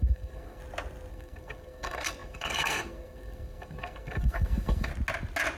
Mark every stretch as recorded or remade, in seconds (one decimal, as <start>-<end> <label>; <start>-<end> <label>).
0.0-0.6 remade; 0.6-1.1 recorded; 1.1-4.9 remade; 4.9-5.6 recorded